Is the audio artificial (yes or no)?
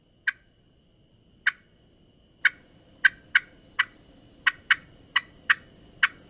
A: no